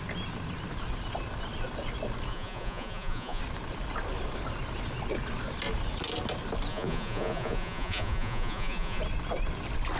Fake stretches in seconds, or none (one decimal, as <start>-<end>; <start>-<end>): 2.3-3.4; 6.7-9.0